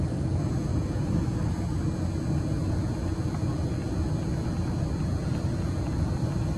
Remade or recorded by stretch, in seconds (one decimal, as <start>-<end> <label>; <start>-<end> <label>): 0.0-0.7 recorded; 0.7-1.5 remade; 1.5-6.6 recorded